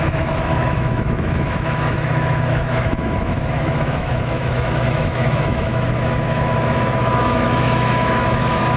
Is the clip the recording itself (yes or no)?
no